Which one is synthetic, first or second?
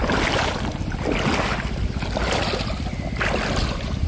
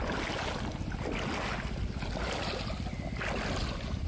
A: first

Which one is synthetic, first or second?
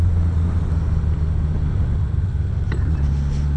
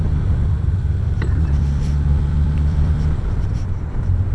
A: second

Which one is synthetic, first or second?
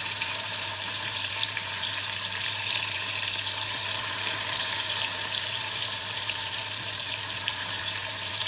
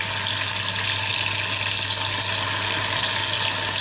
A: first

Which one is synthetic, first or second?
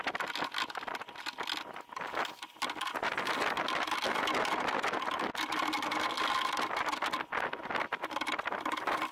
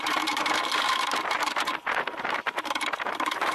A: second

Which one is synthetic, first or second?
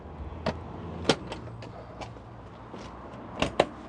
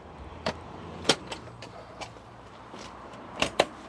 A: second